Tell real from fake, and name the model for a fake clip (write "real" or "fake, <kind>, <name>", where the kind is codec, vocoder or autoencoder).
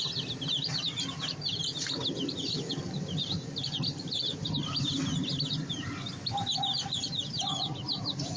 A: fake, vocoder, BigVGAN v2